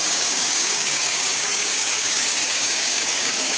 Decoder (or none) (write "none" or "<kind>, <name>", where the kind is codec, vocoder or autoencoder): codec, DAC